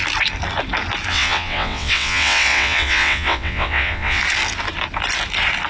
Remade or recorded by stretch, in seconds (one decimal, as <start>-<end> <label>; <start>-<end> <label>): 0.0-1.1 recorded; 1.1-4.2 remade; 4.2-5.7 recorded